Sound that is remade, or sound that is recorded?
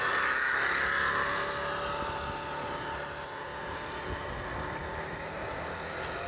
recorded